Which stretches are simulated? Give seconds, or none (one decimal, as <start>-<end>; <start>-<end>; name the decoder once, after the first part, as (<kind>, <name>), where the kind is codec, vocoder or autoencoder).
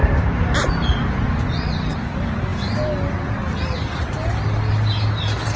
none